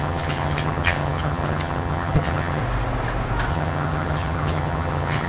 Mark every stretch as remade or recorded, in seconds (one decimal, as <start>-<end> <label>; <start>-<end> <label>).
0.0-2.6 remade; 2.6-3.5 recorded; 3.5-5.3 remade